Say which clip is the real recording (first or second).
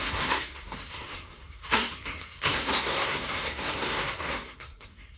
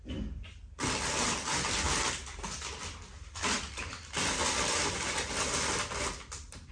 second